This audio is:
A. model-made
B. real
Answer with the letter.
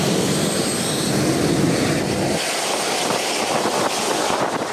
B